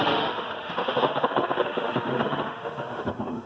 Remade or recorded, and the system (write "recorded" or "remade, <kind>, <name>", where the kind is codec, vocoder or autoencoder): remade, autoencoder, DAC-VAE